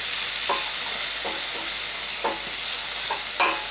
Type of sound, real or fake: real